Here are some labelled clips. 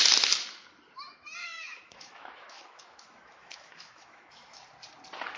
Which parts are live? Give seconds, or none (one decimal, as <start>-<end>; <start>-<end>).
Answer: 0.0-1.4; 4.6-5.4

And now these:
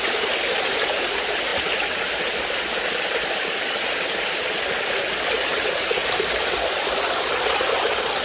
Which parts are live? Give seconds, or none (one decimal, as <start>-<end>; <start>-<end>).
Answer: 0.0-1.5; 4.9-6.0; 7.3-8.2

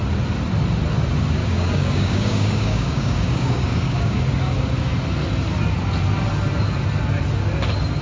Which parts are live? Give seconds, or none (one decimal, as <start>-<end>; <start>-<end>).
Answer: 0.0-1.4; 4.2-8.0

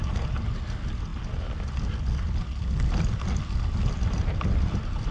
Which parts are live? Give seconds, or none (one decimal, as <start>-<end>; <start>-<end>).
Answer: 0.0-5.1

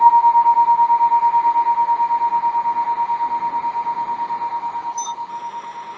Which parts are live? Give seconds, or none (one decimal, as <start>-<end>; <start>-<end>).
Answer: 0.0-5.3

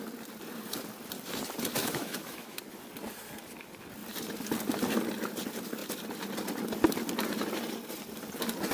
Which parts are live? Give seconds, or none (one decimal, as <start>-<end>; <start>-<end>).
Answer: 0.0-1.8; 2.6-8.7

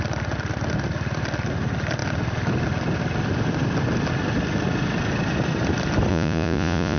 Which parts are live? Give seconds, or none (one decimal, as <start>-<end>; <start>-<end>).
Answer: 0.0-6.1

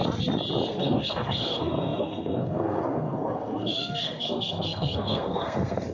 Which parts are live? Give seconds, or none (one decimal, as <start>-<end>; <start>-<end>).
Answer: 0.0-0.7